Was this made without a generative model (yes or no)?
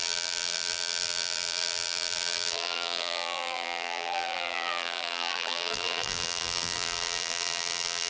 no